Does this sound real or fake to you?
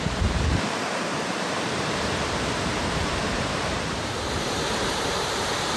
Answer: fake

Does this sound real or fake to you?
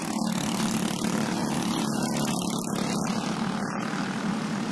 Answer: real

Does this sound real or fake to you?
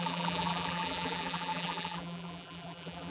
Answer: fake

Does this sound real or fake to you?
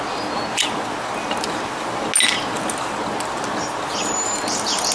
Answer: real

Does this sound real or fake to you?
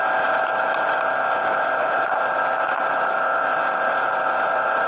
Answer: real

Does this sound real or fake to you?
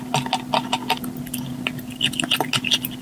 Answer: real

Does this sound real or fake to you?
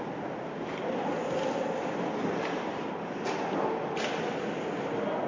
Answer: real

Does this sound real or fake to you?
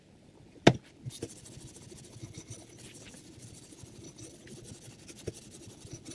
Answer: real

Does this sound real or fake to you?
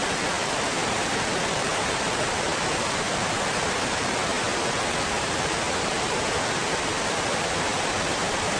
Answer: fake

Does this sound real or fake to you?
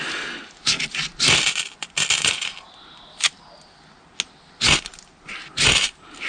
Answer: real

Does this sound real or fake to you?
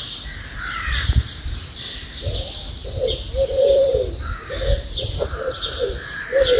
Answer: fake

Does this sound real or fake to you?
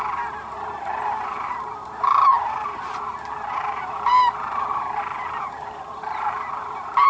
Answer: fake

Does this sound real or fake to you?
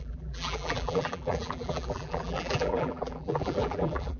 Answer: fake